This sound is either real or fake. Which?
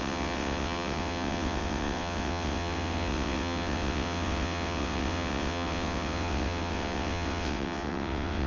fake